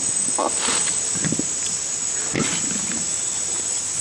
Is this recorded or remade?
recorded